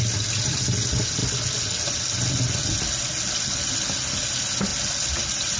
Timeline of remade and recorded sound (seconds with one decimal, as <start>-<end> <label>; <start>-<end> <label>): 0.0-5.6 recorded